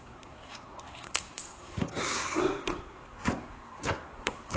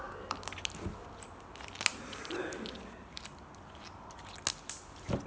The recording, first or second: second